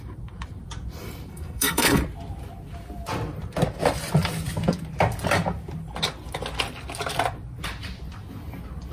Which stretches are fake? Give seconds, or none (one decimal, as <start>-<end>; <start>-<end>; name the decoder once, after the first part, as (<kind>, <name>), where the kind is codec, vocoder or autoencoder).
1.3-2.0 (codec, SNAC)